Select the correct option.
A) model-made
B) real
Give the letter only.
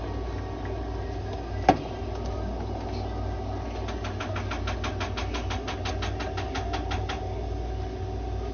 B